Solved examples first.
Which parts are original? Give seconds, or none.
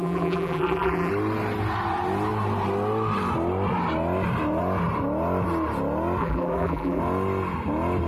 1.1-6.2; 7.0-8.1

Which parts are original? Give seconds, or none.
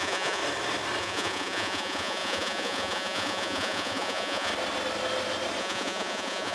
0.4-1.0; 4.5-5.6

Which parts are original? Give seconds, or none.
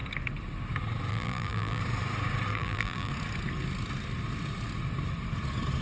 0.0-1.1; 1.8-2.5; 3.1-5.8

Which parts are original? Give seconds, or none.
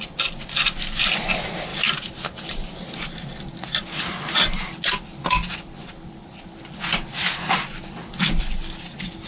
0.0-9.3